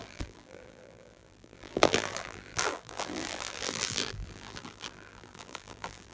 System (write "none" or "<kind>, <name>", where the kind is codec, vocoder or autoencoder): vocoder, BigVGAN v2